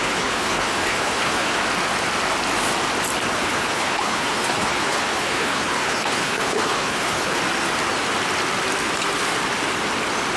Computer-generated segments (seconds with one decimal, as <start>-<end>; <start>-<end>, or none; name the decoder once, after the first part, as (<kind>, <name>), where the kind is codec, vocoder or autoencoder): 0.0-1.6 (codec, HILCodec); 3.4-7.4